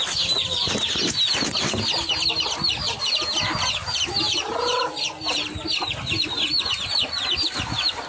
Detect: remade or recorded recorded